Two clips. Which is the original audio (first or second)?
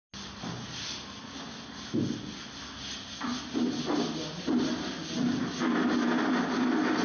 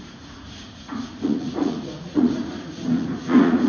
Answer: first